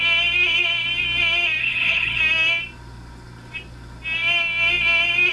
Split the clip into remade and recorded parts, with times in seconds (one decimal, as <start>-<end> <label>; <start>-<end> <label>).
0.0-1.6 recorded; 1.6-2.2 remade; 2.2-5.3 recorded